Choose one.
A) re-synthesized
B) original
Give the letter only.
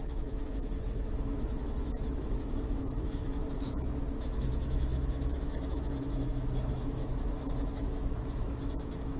A